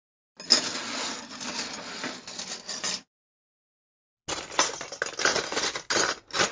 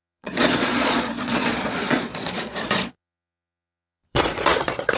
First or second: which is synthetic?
second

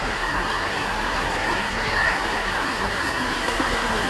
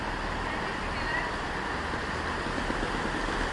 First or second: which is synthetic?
first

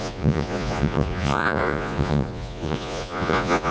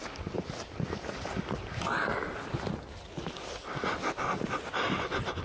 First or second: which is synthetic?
first